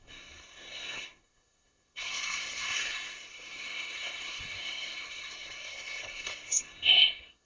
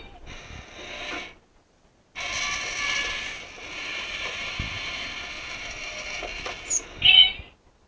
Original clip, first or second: second